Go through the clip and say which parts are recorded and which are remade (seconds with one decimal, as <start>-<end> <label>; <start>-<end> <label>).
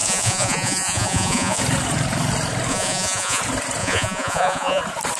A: 0.0-1.6 remade; 1.6-2.7 recorded; 2.7-3.4 remade; 3.4-3.8 recorded; 3.8-4.8 remade; 4.8-5.2 recorded